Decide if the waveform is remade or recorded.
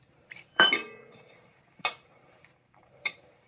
remade